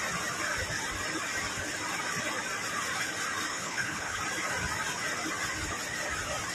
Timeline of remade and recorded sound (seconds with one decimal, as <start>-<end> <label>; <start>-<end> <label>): 0.0-3.5 recorded; 3.5-4.2 remade; 4.2-6.5 recorded